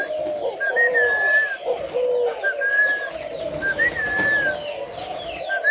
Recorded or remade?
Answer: recorded